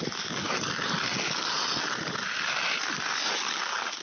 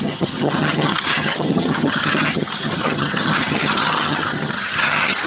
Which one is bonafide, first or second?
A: first